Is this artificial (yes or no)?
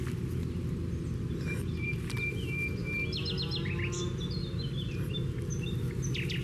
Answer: no